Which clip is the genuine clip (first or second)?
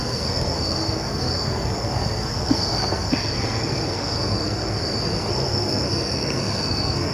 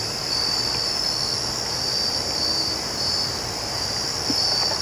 second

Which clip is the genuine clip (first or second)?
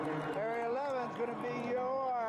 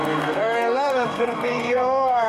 first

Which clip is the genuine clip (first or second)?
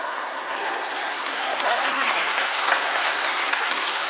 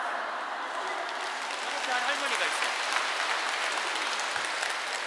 second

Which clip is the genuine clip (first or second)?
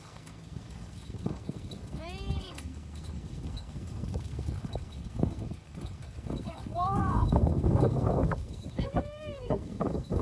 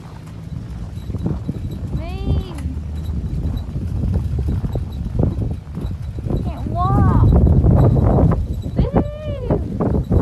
second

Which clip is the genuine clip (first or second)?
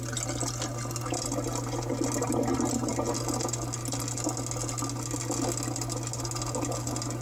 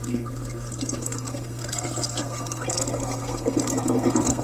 first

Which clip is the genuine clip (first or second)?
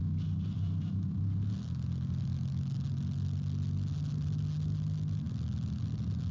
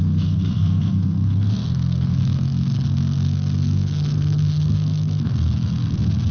first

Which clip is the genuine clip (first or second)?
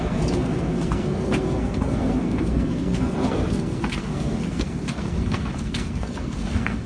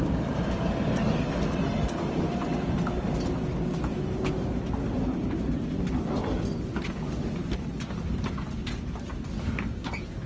second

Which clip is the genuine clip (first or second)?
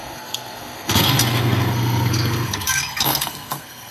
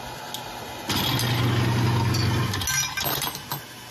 second